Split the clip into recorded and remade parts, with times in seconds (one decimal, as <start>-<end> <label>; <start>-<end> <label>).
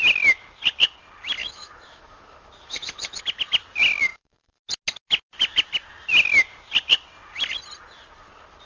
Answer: 0.0-1.4 recorded; 1.4-3.2 remade; 3.2-4.1 recorded; 4.1-4.7 remade; 4.7-8.7 recorded